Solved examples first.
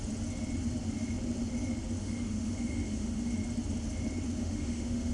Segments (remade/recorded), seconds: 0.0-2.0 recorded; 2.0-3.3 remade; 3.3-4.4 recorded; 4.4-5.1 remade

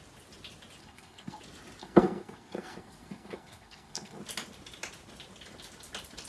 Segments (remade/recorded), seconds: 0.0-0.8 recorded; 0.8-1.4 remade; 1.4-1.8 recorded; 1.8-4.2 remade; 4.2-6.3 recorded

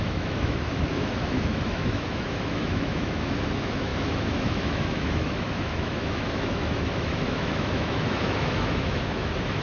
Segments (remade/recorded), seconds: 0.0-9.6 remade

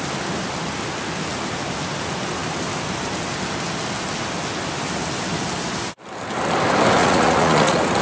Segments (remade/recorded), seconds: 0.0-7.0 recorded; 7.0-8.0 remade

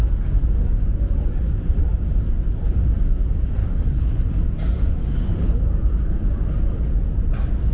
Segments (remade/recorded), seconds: 0.0-3.6 recorded; 3.6-4.3 remade; 4.3-5.0 recorded; 5.0-5.6 remade; 5.6-7.7 recorded

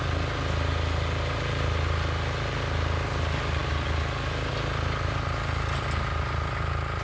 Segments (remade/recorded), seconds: 0.0-7.0 recorded

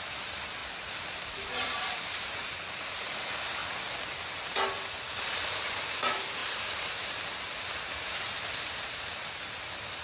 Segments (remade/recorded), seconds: 0.0-0.6 remade; 0.6-1.1 recorded; 1.1-3.6 remade; 3.6-4.4 recorded; 4.4-10.0 remade